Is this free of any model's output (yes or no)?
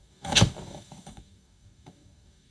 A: no